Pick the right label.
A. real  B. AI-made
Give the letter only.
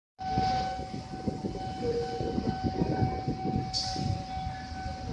A